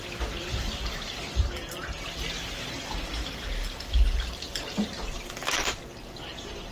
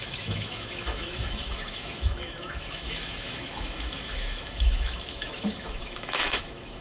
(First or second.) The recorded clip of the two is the first